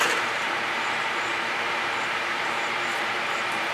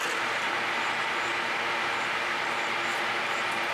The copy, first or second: first